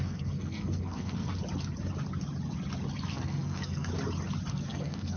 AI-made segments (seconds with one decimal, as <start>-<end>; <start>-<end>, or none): 0.0-1.3; 3.1-3.9; 4.5-5.2